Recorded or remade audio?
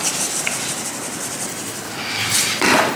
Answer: recorded